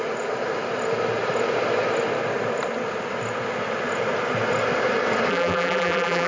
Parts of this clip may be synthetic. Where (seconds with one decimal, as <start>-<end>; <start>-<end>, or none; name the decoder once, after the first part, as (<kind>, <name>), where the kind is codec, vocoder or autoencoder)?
5.3-6.3 (vocoder, BigVGAN v2)